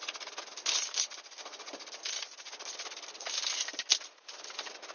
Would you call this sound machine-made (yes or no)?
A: yes